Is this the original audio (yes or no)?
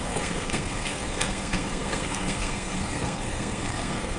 no